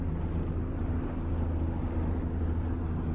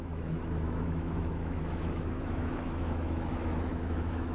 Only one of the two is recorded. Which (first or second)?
first